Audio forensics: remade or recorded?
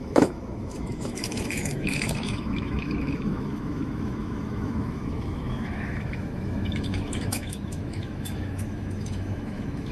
remade